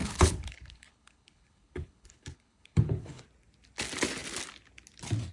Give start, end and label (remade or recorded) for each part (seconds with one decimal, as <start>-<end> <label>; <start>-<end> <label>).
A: 0.0-3.2 remade; 3.2-5.3 recorded